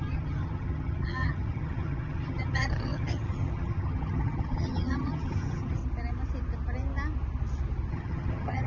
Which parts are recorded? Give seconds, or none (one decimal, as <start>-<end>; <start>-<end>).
5.8-7.9